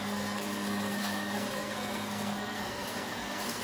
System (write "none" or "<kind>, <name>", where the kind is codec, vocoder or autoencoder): codec, SNAC